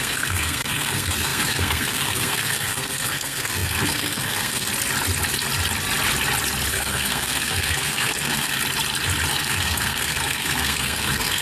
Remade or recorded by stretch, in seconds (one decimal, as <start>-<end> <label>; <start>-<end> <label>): 0.0-4.7 remade; 4.7-6.7 recorded; 6.7-8.6 remade; 8.6-9.3 recorded; 9.3-11.4 remade